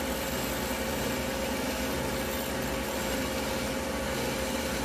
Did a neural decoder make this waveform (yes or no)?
no